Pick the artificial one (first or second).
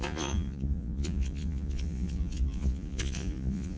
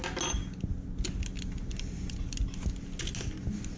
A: first